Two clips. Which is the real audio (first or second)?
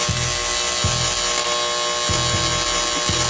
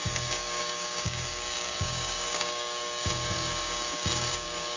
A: first